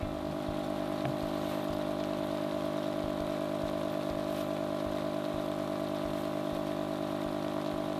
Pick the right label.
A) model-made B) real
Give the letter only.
B